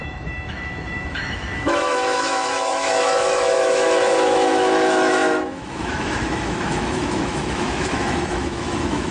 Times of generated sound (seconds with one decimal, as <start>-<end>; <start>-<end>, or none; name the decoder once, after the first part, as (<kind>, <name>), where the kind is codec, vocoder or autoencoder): 0.0-9.1 (autoencoder, DAC-VAE)